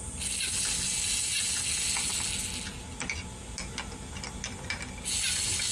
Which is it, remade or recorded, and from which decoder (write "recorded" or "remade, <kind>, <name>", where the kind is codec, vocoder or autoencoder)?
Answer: recorded